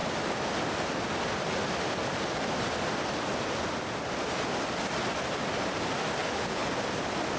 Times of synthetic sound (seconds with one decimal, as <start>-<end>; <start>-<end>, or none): 6.2-6.7